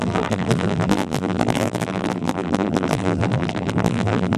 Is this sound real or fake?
fake